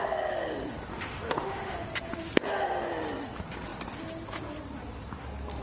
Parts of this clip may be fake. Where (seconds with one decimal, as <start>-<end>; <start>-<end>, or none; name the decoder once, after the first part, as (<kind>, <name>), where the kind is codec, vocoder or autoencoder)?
0.9-1.9 (autoencoder, DAC-VAE)